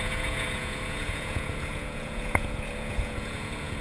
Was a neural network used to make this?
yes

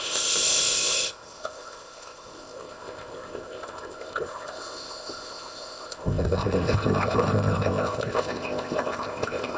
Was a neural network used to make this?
yes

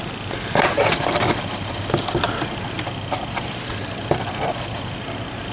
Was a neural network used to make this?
no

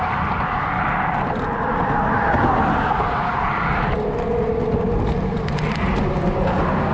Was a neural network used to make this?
no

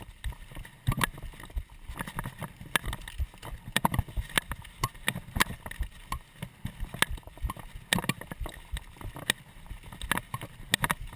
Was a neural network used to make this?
no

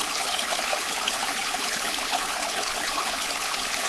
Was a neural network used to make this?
yes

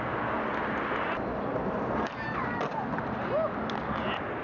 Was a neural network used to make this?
no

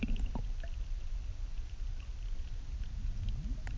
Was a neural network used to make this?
no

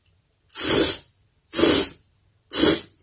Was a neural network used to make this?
no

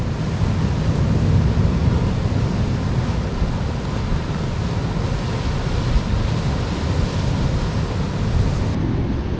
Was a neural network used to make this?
no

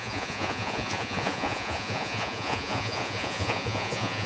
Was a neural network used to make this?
yes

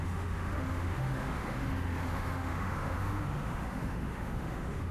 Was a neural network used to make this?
yes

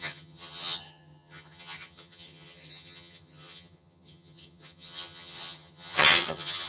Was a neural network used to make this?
yes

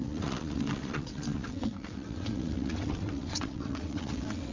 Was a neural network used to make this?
yes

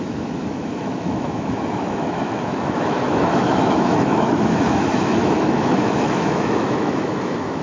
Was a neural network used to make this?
yes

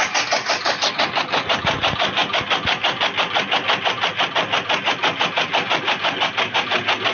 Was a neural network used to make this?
no